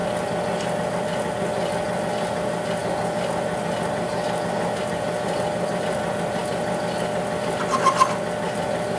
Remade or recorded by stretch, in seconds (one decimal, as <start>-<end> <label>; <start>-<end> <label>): 0.0-9.0 recorded